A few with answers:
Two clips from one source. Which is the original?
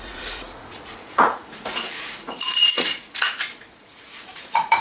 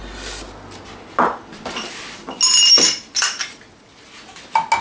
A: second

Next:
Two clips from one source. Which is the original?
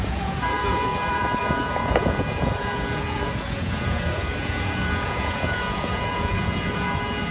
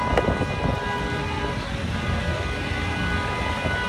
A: second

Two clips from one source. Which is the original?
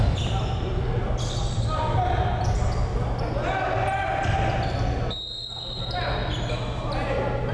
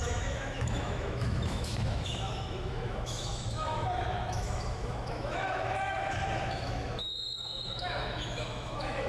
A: first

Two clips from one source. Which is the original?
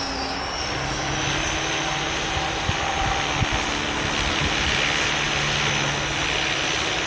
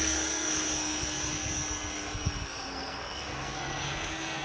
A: first